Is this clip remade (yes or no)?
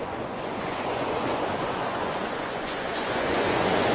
yes